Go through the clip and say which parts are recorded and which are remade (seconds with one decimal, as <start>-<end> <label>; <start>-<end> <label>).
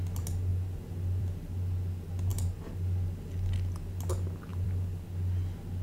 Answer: 0.0-0.5 recorded; 0.5-1.5 remade; 1.5-4.5 recorded; 4.5-5.1 remade; 5.1-5.8 recorded